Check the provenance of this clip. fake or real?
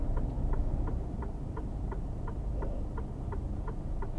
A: real